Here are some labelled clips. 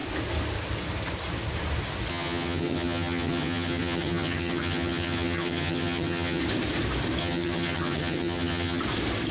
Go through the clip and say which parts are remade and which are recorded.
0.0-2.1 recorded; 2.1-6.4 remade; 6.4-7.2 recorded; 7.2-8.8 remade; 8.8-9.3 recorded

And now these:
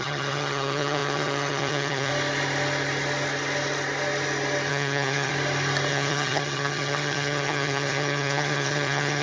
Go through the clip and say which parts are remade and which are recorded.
0.0-2.1 remade; 2.1-4.7 recorded; 4.7-5.3 remade; 5.3-5.9 recorded; 5.9-9.2 remade